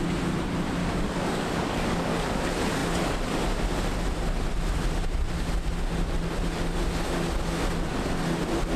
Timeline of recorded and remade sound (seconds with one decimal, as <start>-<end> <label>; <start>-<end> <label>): 0.0-0.8 recorded; 0.8-2.4 remade; 2.4-8.8 recorded